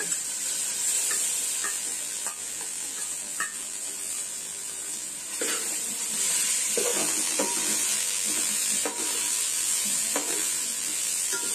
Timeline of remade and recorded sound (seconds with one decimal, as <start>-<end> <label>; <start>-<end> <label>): 0.0-1.6 recorded; 1.6-5.1 remade; 5.1-6.9 recorded; 6.9-11.5 remade